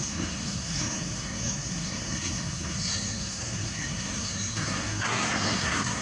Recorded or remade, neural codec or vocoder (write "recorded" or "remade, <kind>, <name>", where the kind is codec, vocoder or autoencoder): remade, codec, SNAC